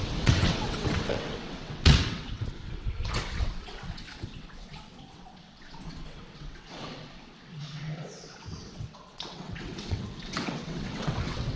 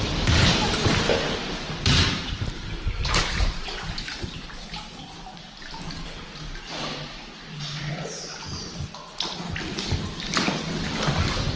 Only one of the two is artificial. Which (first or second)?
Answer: first